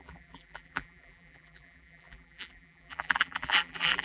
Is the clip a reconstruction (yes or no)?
yes